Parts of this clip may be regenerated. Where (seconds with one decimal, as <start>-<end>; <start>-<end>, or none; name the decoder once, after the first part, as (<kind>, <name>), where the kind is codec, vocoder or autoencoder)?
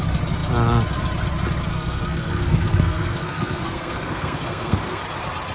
1.7-5.0 (codec, SNAC)